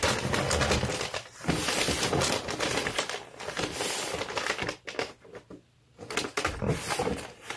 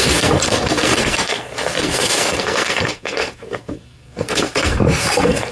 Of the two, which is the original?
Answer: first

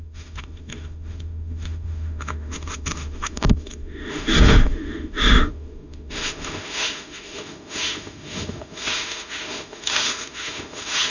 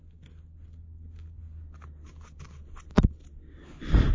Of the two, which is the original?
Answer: second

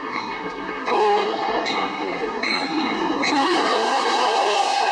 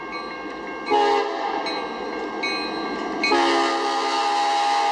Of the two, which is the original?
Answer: second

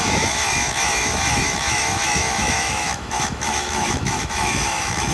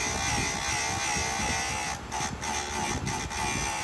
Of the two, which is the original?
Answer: second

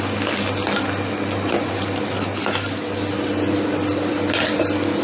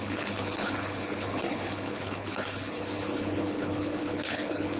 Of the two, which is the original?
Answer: first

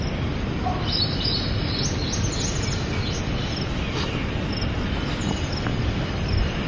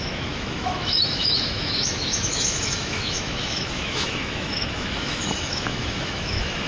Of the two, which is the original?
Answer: first